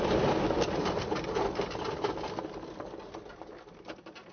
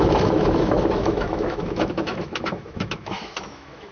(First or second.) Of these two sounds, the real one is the first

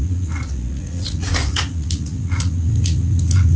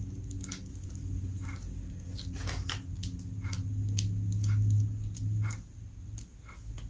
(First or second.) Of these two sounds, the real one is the second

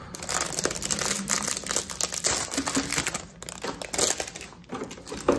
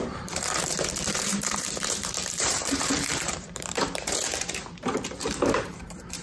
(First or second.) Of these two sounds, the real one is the first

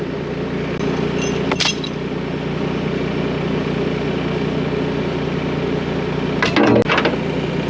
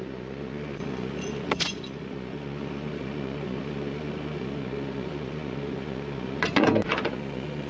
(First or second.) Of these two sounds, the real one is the first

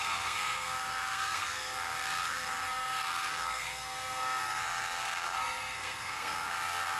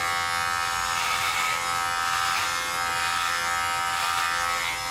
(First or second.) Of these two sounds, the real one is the second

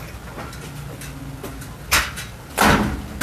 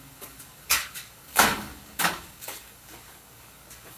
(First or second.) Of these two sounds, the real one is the first